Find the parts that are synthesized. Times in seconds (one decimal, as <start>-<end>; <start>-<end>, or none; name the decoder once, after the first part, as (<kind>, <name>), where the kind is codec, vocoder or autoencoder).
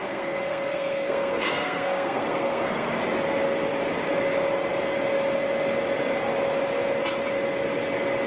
0.0-2.9 (codec, SNAC)